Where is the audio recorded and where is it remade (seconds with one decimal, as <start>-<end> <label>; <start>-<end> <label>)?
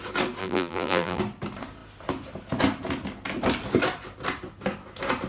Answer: 0.0-0.4 recorded; 0.4-1.2 remade; 1.2-5.3 recorded